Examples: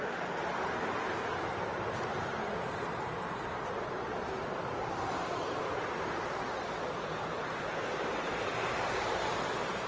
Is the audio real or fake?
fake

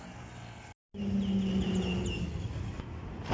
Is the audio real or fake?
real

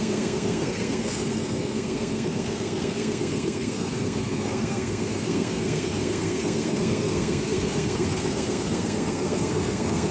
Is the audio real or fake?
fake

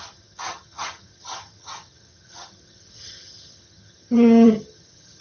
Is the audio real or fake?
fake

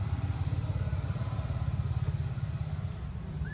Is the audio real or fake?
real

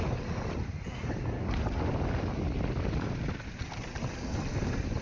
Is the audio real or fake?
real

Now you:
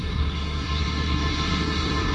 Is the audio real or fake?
fake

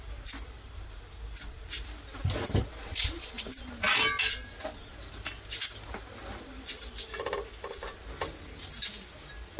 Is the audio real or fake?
real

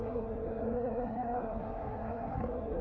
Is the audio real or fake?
fake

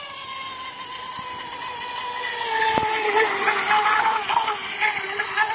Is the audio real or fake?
real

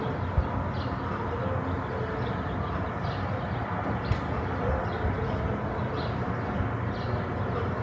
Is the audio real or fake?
real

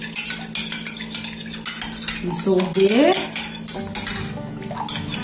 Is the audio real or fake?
real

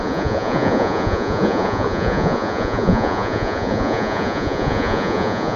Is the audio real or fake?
fake